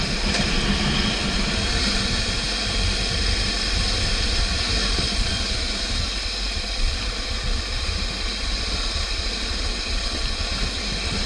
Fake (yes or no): no